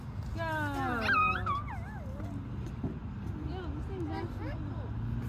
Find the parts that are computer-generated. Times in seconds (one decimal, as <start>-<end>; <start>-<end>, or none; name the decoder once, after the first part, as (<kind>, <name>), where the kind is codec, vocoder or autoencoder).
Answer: none

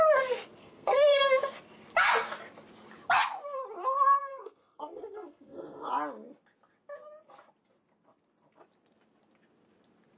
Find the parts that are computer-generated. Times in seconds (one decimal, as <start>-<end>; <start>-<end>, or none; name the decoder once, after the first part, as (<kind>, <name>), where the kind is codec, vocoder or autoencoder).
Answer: 0.6-1.2 (codec, SNAC); 4.2-5.9

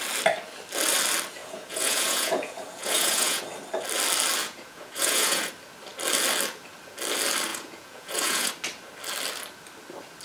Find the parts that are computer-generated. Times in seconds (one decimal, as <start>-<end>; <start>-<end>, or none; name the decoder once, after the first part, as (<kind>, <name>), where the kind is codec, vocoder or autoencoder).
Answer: 1.4-3.4 (vocoder, Vocos); 4.4-5.5; 7.5-8.5